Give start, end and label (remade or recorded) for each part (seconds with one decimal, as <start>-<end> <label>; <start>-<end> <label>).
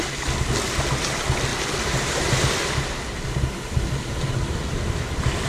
0.0-5.5 recorded